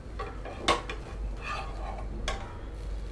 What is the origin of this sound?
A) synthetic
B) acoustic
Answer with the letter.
B